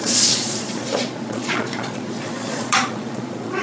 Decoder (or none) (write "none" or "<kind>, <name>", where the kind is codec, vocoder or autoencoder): vocoder, Vocos